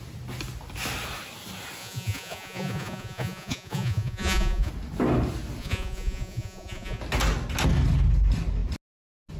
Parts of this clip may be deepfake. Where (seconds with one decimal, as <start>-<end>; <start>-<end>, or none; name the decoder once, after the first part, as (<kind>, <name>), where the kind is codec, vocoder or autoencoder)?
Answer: 1.8-4.7 (vocoder, Vocos); 5.6-7.0